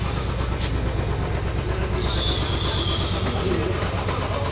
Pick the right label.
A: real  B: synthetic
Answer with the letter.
A